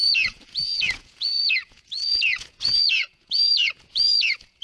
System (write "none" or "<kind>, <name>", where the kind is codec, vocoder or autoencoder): vocoder, Vocos